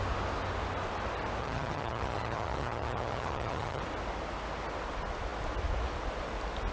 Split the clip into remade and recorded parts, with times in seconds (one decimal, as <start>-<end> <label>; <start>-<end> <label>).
0.0-1.4 recorded; 1.4-3.8 remade; 3.8-6.7 recorded